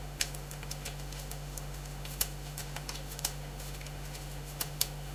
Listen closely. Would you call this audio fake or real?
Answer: fake